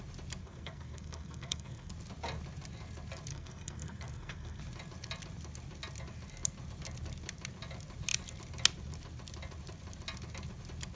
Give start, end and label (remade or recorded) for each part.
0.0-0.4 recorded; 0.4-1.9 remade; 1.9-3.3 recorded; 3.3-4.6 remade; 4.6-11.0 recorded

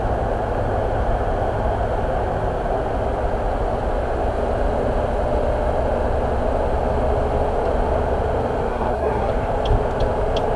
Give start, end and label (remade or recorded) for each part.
0.0-8.7 recorded; 8.7-9.3 remade; 9.3-10.6 recorded

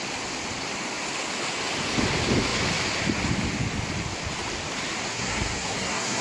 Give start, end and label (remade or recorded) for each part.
0.0-5.1 recorded; 5.1-6.2 remade

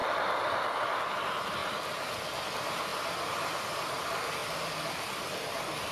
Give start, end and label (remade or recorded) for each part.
0.0-5.9 recorded